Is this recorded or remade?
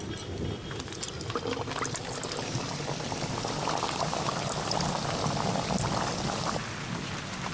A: recorded